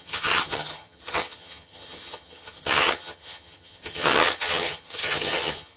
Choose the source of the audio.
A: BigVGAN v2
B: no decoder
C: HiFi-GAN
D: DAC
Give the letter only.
C